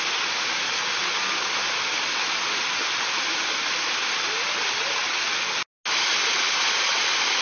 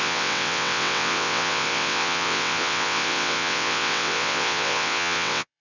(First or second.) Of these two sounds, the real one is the first